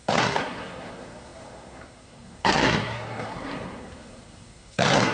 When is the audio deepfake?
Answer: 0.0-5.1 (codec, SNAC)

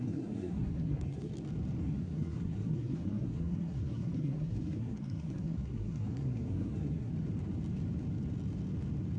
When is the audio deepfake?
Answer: 0.0-1.3 (codec, SNAC); 1.8-7.1

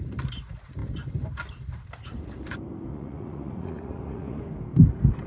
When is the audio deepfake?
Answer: 2.9-4.4 (vocoder, Vocos)